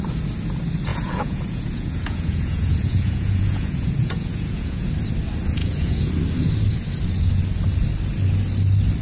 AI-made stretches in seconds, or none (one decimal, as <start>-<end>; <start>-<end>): 0.9-4.9; 5.6-6.1